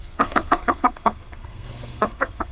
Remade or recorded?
remade